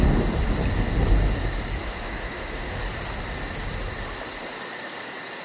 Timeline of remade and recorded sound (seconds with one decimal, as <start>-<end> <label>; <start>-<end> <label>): 0.0-1.8 recorded; 1.8-2.8 remade; 2.8-5.4 recorded